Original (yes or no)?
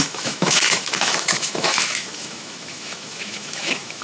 no